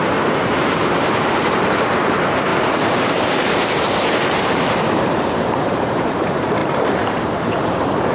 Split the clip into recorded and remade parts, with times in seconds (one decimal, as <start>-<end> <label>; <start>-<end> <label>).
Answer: 0.0-8.1 remade